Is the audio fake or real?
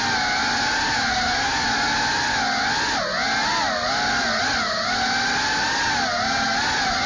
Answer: real